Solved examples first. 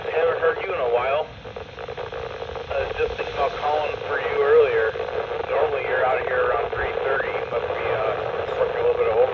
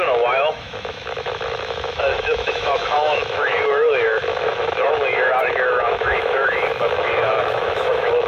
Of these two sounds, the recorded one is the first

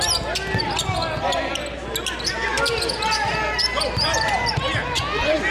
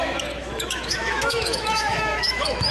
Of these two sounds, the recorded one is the first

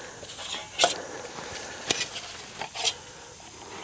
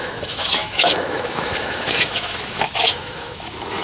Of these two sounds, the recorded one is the first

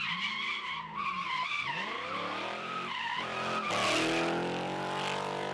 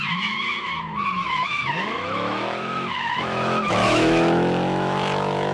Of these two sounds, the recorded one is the first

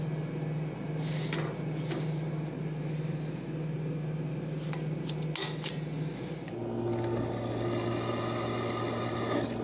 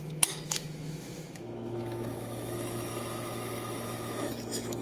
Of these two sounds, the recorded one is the first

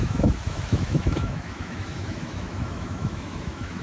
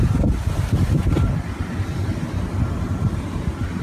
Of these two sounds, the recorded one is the second